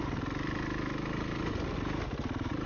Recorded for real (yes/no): yes